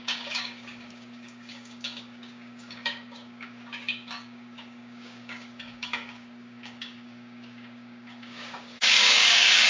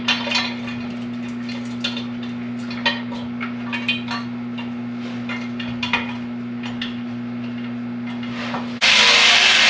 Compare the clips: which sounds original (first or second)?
second